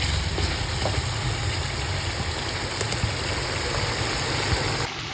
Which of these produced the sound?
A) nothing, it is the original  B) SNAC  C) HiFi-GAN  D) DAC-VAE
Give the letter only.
A